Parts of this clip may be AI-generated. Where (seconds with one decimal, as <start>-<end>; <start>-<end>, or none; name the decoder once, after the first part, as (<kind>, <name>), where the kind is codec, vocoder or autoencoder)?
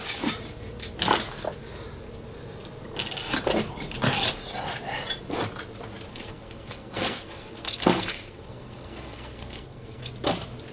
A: 6.1-10.1 (codec, SNAC)